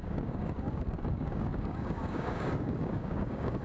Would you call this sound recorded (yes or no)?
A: no